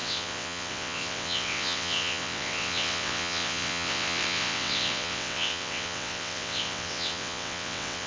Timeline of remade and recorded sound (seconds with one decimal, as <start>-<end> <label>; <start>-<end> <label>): 0.0-8.1 remade